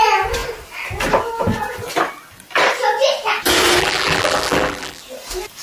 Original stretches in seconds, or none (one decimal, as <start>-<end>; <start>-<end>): 0.0-3.8; 5.0-5.6